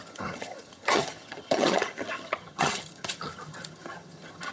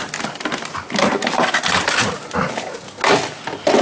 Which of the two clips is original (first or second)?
second